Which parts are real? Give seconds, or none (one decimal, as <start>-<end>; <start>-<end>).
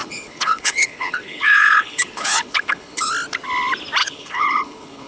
3.1-4.0